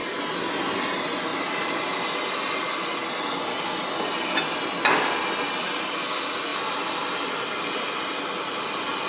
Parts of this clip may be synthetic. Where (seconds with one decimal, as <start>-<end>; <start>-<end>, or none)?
none